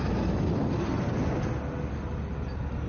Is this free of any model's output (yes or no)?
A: yes